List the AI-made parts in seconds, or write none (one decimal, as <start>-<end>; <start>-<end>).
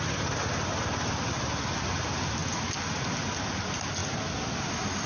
none